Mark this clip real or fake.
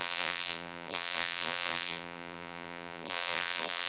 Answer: fake